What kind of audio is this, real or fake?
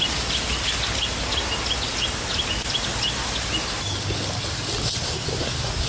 real